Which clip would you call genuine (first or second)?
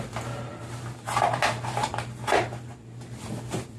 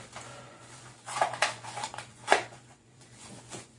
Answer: first